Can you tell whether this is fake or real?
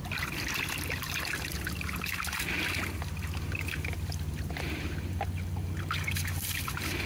real